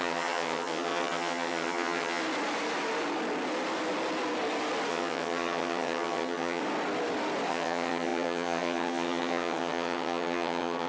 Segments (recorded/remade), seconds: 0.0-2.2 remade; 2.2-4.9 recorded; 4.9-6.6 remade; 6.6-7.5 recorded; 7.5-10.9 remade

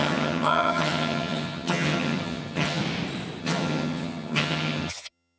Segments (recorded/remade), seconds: 0.0-2.8 remade; 2.8-3.4 recorded; 3.4-5.4 remade

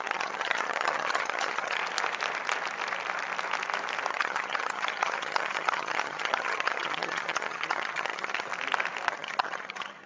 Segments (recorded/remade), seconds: 0.0-1.8 remade; 1.8-4.1 recorded; 4.1-8.5 remade; 8.5-9.1 recorded; 9.1-10.1 remade

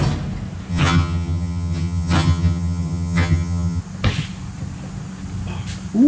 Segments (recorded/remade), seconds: 0.0-0.7 recorded; 0.7-3.8 remade; 3.8-6.1 recorded

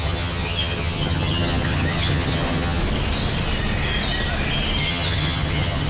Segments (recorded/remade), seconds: 0.0-2.8 remade; 2.8-4.8 recorded; 4.8-5.9 remade

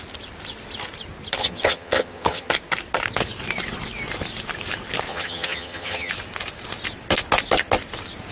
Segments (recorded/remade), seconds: 0.0-1.4 recorded; 1.4-2.5 remade; 2.5-5.1 recorded; 5.1-6.1 remade; 6.1-8.3 recorded